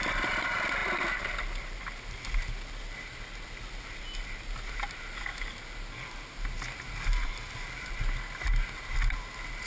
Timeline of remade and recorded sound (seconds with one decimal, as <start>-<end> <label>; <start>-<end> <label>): 0.0-9.7 recorded